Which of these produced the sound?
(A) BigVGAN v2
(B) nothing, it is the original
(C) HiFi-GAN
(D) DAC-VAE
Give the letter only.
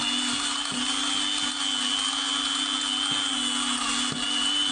B